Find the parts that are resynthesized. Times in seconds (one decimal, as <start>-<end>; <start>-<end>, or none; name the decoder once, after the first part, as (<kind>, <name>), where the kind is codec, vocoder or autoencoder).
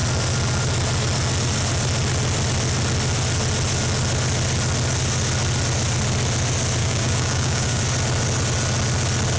6.8-7.8 (codec, DAC)